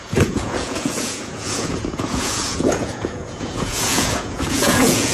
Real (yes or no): no